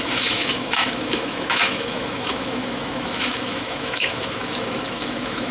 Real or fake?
fake